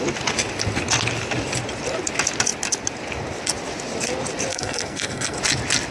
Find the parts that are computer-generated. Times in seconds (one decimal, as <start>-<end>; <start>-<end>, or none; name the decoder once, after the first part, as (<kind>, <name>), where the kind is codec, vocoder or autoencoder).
4.5-5.4 (codec, SNAC)